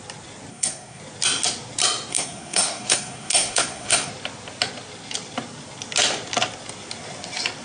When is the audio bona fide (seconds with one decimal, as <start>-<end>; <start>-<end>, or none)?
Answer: 0.0-0.5; 1.0-2.1; 4.1-7.6